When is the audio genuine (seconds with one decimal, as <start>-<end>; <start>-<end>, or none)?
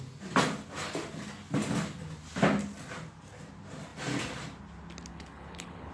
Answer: 0.0-5.1